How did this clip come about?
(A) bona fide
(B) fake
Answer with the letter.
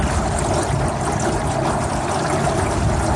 A